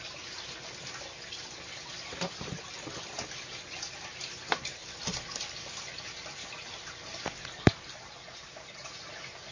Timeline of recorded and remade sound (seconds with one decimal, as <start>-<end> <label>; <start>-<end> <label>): 0.0-4.8 recorded; 4.8-8.1 remade; 8.1-9.5 recorded